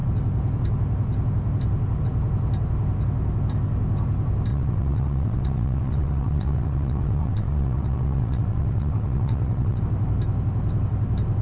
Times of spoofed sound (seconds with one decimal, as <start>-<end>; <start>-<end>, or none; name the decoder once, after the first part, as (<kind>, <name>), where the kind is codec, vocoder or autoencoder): 4.5-9.8 (vocoder, WaveNeXt)